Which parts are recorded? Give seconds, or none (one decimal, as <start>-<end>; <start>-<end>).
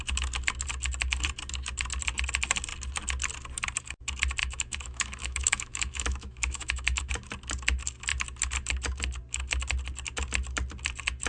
0.0-4.4; 7.1-11.3